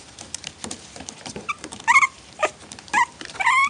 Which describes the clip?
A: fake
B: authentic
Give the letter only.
A